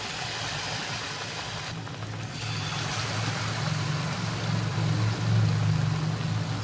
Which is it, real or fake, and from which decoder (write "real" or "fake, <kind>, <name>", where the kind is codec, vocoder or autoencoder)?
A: real